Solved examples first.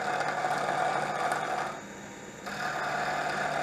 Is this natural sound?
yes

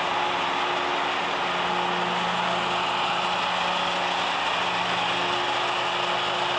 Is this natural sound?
yes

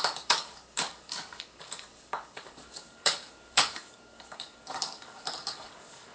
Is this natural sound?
no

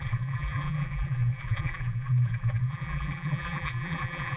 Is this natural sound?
no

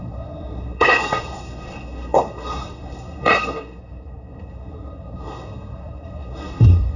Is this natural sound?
no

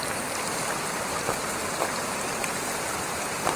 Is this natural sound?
yes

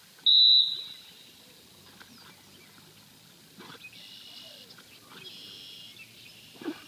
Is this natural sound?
yes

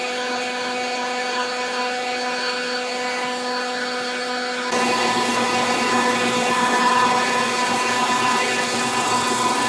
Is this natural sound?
no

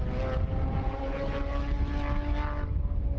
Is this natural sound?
yes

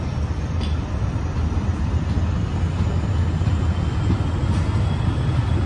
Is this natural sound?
yes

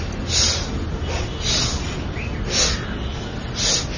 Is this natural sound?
yes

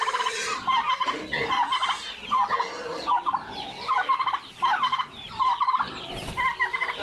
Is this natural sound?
yes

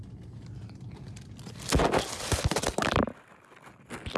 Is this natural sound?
yes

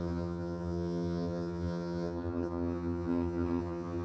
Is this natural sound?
no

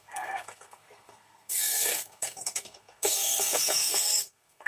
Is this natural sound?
no